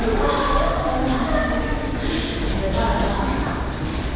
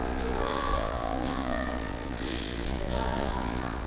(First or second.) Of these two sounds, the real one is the first